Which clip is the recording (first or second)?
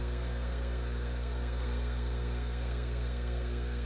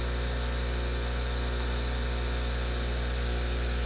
second